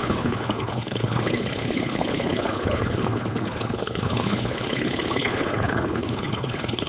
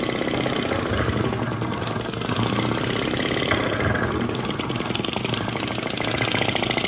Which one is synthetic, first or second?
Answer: first